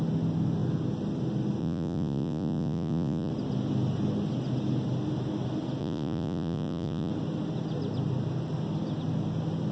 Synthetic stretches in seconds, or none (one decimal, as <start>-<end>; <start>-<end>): 1.6-3.3; 5.8-7.1